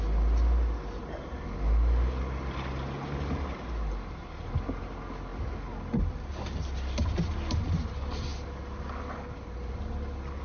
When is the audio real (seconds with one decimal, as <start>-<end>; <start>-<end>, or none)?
0.0-10.4